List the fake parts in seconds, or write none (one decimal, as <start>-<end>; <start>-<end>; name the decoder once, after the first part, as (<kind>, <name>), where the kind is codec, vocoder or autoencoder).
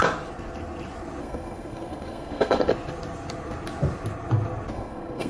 1.2-2.7 (codec, SNAC); 4.7-5.3